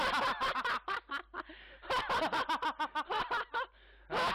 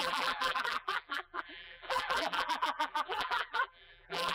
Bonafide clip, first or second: first